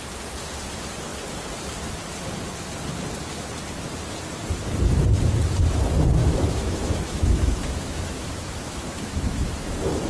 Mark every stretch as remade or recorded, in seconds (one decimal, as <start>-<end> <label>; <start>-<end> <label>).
0.0-6.2 recorded; 6.2-9.7 remade; 9.7-10.1 recorded